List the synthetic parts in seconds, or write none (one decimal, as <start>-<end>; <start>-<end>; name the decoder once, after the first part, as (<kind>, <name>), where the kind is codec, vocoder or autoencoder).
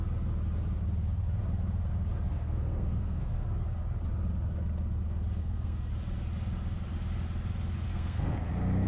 2.3-3.2 (codec, SNAC); 5.4-5.9; 7.9-8.5